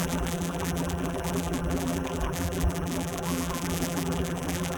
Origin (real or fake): fake